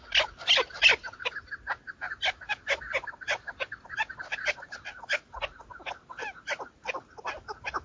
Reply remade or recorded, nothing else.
recorded